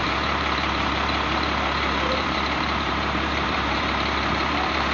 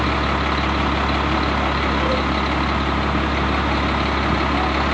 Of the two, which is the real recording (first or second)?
second